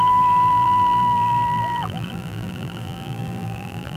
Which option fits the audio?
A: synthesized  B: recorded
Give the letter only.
A